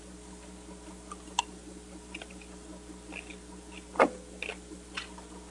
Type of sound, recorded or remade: recorded